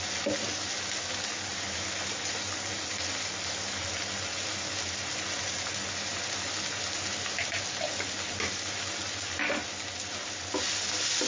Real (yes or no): yes